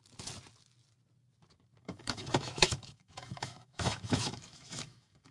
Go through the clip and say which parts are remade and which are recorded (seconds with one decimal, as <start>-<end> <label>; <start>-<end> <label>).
0.0-1.8 recorded; 1.8-5.3 remade

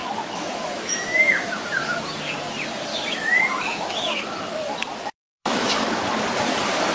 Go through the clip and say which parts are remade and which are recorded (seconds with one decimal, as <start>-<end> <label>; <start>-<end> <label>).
0.0-1.6 remade; 1.6-2.9 recorded; 2.9-4.8 remade; 4.8-5.4 recorded; 5.4-6.0 remade; 6.0-6.9 recorded

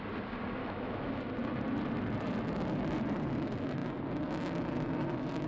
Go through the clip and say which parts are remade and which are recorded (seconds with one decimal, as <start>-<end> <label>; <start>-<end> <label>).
0.0-0.6 recorded; 0.6-1.1 remade; 1.1-5.5 recorded